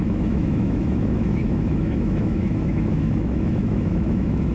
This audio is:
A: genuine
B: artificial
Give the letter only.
B